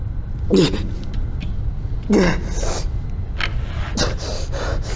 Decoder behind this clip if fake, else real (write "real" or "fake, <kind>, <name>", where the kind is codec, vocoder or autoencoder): real